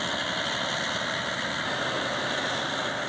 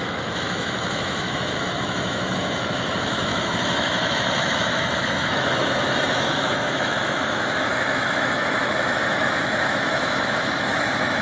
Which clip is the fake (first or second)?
second